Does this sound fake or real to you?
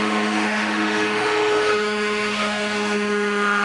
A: fake